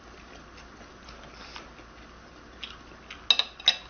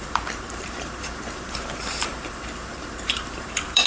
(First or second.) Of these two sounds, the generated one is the second